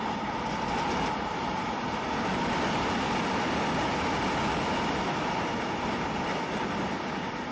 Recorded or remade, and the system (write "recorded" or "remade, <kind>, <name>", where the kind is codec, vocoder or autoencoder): recorded